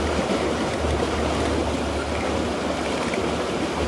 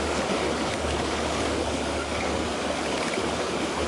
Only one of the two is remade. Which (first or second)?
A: second